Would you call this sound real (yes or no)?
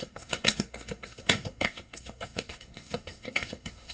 no